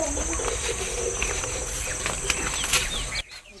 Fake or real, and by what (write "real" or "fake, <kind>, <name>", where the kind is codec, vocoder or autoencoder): fake, vocoder, BigVGAN v2